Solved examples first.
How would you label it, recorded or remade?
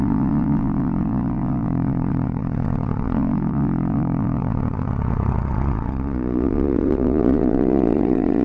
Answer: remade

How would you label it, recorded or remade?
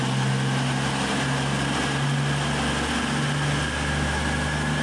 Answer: recorded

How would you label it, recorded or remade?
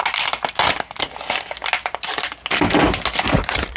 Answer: recorded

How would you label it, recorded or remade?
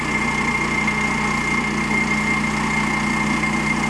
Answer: recorded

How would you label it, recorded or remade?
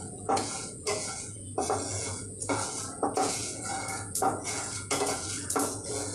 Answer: remade